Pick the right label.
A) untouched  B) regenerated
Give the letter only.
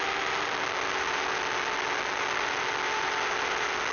A